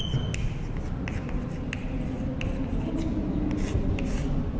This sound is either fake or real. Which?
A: real